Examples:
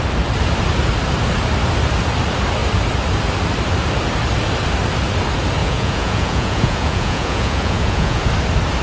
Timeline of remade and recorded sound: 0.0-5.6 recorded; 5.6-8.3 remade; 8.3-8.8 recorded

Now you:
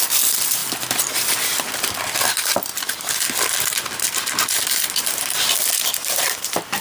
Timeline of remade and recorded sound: 0.0-0.6 remade; 0.6-1.7 recorded; 1.7-2.7 remade; 2.7-3.4 recorded; 3.4-6.8 remade